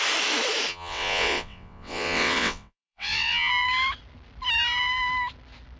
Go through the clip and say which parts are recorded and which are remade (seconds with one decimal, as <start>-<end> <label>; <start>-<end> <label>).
0.0-0.7 recorded; 0.7-3.5 remade; 3.5-5.8 recorded